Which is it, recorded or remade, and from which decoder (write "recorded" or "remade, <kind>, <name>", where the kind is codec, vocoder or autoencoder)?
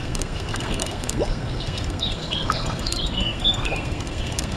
remade, codec, SNAC